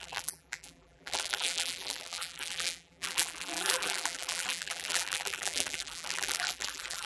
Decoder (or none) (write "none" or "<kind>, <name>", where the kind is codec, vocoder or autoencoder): vocoder, BigVGAN v2